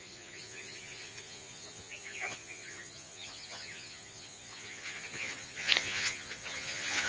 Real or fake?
fake